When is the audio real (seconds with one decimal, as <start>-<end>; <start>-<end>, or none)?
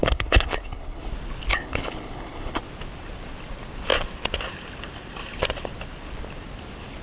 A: 1.1-1.5; 2.6-7.0